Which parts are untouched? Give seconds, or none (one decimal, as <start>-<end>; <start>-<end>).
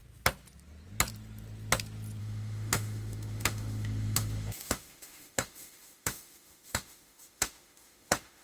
0.0-2.2